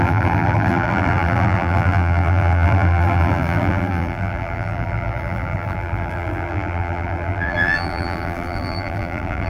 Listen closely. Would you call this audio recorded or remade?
remade